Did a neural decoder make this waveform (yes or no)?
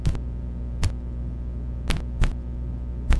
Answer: no